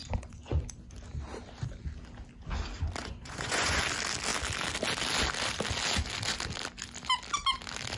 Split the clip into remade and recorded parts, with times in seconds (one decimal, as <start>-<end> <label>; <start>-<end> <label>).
0.0-0.7 remade; 0.7-3.0 recorded; 3.0-3.8 remade; 3.8-8.0 recorded